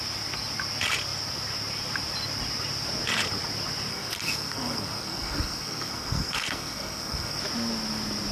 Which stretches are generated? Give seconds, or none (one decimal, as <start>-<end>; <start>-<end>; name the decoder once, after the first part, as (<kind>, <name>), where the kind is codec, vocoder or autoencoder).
3.9-7.4 (codec, SNAC)